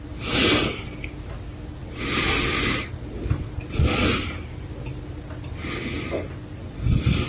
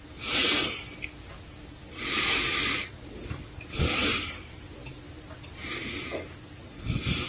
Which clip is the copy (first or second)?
second